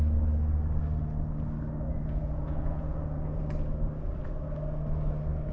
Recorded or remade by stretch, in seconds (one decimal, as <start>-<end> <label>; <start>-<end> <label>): 0.0-1.9 recorded; 1.9-3.4 remade; 3.4-5.5 recorded